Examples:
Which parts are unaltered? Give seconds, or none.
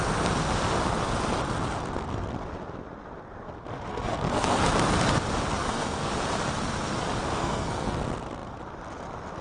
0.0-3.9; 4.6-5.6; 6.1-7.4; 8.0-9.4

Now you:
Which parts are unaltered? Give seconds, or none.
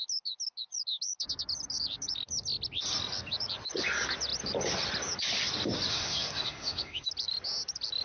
0.0-5.9; 7.1-8.0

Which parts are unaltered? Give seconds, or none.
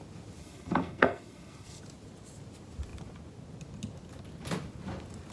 0.0-0.4; 1.8-5.3